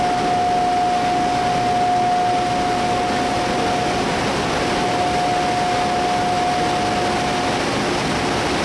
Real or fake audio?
real